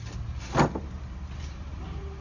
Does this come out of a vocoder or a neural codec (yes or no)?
no